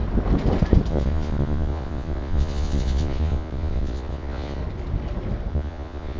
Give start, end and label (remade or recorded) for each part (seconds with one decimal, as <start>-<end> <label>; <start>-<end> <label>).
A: 0.0-0.9 recorded; 0.9-4.6 remade; 4.6-5.5 recorded; 5.5-6.2 remade